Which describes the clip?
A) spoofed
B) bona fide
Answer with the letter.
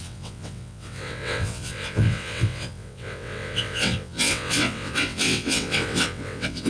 A